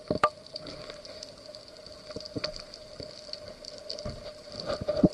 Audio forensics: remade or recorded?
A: recorded